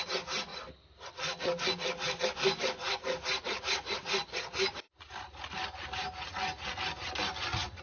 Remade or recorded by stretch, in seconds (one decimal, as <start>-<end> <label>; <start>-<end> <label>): 0.0-7.8 recorded